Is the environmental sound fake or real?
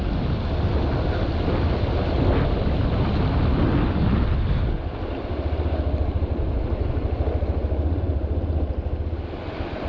real